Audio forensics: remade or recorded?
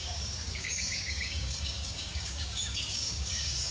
remade